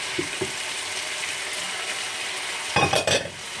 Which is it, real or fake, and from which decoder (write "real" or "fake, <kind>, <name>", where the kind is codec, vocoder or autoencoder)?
real